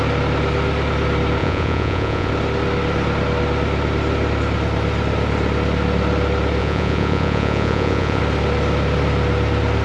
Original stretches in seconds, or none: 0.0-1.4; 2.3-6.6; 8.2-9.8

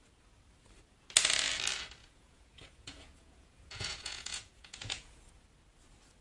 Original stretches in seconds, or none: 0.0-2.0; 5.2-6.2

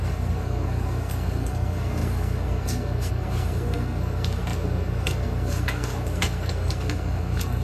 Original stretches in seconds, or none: none